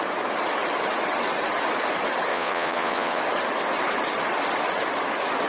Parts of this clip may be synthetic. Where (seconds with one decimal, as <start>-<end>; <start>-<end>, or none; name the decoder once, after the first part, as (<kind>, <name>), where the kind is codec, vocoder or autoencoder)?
2.3-3.2 (vocoder, Vocos)